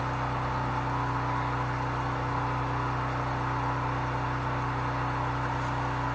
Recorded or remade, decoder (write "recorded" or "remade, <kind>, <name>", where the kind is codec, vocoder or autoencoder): recorded